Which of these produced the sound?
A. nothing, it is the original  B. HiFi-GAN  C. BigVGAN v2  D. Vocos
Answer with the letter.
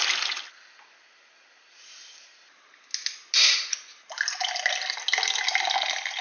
A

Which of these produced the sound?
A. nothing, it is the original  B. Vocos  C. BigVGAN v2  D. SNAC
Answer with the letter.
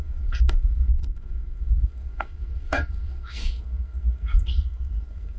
D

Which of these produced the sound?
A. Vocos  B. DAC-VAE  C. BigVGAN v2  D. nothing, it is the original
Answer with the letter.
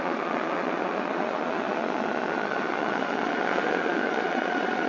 A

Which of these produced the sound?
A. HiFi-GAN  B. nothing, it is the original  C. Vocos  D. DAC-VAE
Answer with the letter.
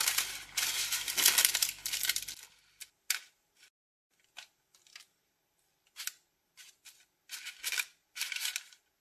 B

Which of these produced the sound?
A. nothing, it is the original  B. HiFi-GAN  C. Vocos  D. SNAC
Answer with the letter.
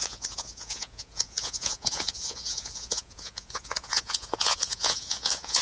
C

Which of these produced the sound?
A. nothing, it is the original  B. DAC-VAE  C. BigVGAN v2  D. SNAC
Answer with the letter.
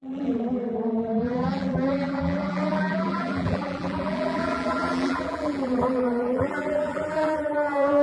C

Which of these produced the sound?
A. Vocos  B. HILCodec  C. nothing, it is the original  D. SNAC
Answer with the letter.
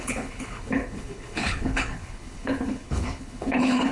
B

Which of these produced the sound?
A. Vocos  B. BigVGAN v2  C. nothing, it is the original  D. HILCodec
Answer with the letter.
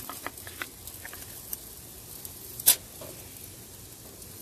C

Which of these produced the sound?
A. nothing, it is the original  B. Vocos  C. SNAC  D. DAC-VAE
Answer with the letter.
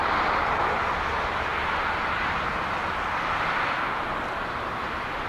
A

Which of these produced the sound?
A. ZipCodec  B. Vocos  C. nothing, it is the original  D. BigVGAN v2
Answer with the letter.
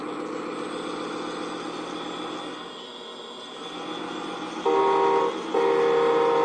C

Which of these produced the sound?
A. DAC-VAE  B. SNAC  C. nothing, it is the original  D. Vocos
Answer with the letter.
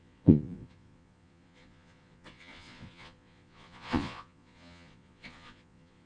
D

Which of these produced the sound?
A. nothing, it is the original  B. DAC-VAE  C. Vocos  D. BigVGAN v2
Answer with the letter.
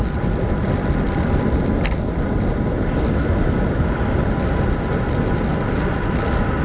A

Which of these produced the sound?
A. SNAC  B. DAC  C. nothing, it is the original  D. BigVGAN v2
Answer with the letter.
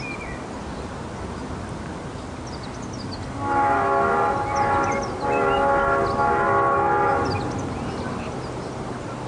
C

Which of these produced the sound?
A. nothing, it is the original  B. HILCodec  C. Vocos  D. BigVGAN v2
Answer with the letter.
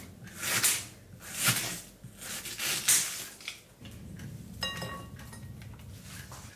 A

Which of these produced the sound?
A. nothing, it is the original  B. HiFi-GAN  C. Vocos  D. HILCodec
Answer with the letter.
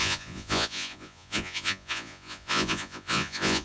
C